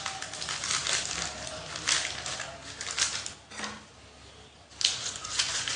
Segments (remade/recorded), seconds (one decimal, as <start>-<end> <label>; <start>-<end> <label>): 0.0-4.9 recorded; 4.9-5.8 remade